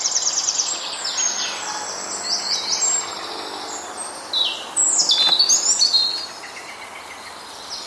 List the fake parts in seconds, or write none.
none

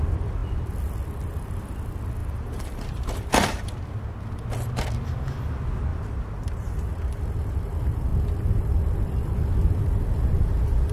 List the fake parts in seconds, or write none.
2.2-3.8 (vocoder, BigVGAN v2); 5.9-7.2

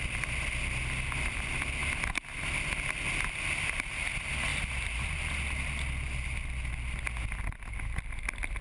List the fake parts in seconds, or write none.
4.5-5.2 (vocoder, BigVGAN v2)

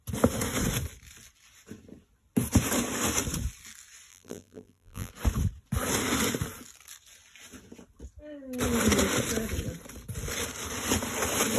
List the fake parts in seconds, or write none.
4.1-5.1 (vocoder, BigVGAN v2)

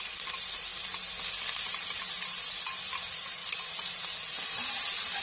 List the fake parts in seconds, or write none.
0.0-0.7 (vocoder, BigVGAN v2); 1.7-3.4; 4.4-5.2

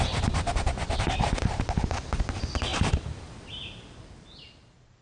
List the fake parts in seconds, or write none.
0.0-5.0 (vocoder, BigVGAN v2)

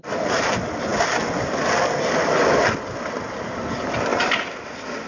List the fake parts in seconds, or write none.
none

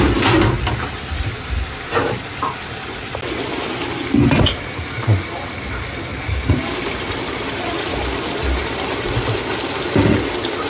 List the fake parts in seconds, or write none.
6.1-7.2 (vocoder, BigVGAN v2)